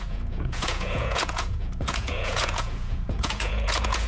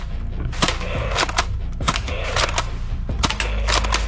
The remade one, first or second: first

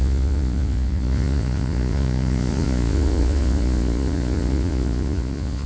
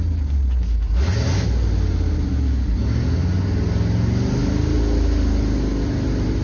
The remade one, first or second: first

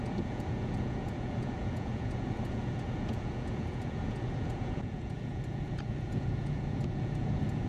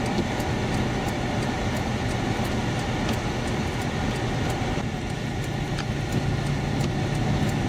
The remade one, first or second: first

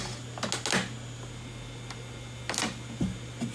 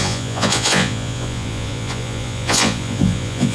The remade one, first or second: second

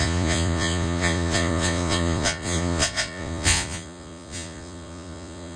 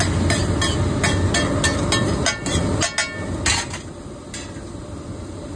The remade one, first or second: first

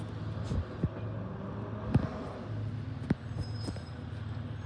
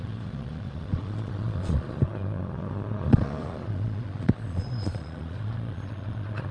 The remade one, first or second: second